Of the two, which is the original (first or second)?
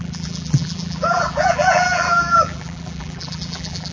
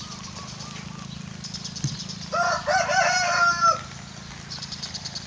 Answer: second